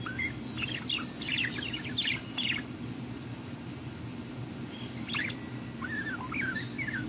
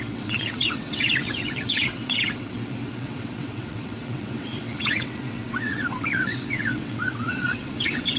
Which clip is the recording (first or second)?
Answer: first